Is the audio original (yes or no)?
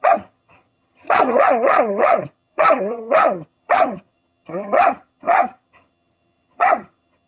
no